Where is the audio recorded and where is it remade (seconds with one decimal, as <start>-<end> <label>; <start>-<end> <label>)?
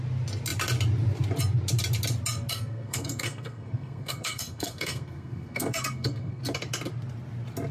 0.0-2.5 recorded; 2.5-6.4 remade; 6.4-7.7 recorded